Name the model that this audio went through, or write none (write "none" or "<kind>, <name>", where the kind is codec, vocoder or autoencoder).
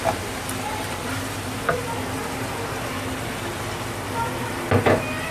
vocoder, BigVGAN v2